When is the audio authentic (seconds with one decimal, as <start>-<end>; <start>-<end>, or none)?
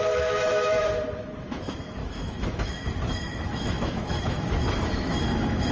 none